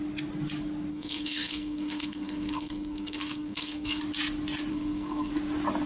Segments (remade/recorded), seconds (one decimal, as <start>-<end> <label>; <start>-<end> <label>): 0.0-0.9 recorded; 0.9-4.0 remade; 4.0-4.7 recorded; 4.7-5.3 remade; 5.3-5.9 recorded